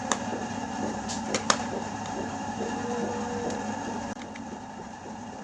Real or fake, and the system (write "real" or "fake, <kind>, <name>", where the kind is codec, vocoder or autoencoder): fake, vocoder, BigVGAN v2